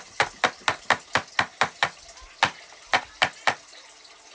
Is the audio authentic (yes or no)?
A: yes